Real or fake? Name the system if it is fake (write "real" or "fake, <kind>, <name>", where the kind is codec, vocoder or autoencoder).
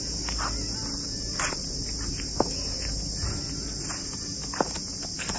real